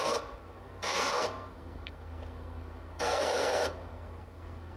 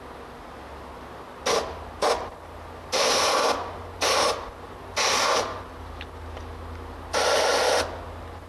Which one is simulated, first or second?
first